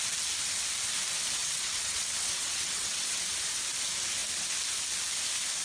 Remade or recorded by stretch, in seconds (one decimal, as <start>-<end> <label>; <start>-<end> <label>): 0.0-1.4 recorded; 1.4-3.2 remade; 3.2-5.6 recorded